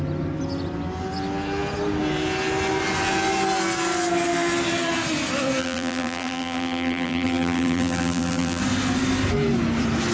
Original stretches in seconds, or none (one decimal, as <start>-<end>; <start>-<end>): 0.0-5.6; 8.6-10.1